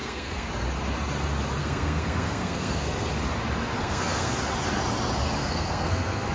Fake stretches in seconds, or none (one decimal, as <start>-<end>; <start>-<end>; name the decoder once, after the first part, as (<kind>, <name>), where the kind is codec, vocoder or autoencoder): 0.0-0.5 (codec, SNAC); 1.6-3.1; 3.8-4.3; 5.4-6.3